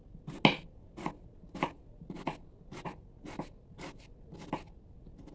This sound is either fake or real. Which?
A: real